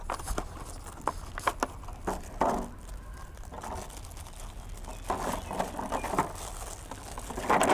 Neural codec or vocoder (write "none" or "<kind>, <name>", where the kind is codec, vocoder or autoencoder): none